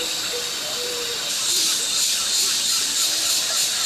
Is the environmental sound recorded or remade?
recorded